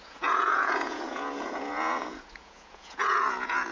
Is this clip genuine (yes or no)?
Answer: no